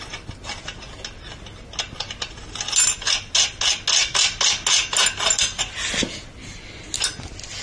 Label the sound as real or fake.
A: real